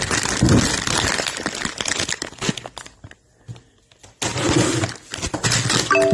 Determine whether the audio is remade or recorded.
recorded